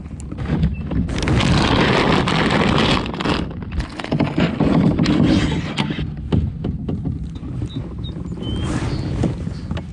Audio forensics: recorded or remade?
recorded